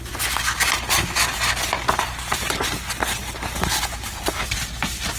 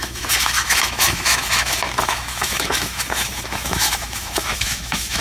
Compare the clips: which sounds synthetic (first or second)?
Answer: second